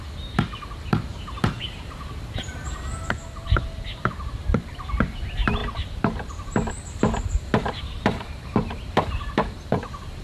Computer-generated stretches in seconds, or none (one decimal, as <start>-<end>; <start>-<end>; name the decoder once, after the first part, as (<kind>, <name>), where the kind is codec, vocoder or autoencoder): 1.1-1.9 (vocoder, BigVGAN v2); 2.9-4.7; 5.6-6.7; 7.6-10.2